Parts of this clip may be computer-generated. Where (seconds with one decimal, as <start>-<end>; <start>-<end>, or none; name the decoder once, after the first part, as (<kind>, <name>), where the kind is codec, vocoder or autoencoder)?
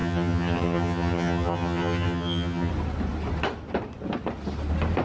0.0-2.7 (vocoder, HiFi-GAN)